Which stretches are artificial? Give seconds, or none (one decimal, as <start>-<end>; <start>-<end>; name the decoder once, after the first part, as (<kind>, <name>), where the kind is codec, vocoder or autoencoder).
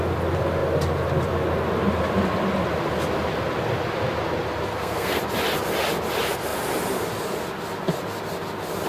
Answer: 4.7-5.2 (codec, SNAC)